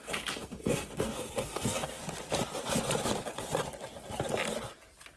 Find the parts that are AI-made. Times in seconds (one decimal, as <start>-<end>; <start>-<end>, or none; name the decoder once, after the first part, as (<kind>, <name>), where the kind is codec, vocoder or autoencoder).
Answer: 0.0-2.0 (codec, SNAC)